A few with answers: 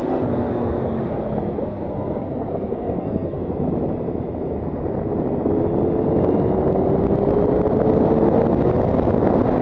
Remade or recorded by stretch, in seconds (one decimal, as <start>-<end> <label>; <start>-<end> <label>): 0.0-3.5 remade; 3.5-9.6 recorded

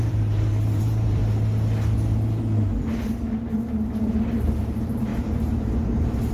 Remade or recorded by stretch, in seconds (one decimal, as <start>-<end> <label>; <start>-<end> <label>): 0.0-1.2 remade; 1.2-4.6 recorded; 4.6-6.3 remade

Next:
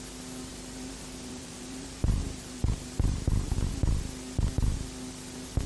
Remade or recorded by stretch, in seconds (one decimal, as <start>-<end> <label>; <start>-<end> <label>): 0.0-0.5 recorded; 0.5-3.9 remade; 3.9-5.7 recorded